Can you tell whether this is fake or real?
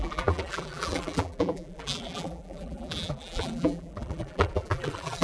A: fake